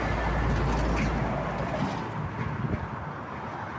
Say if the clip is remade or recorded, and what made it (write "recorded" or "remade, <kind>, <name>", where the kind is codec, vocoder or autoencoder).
recorded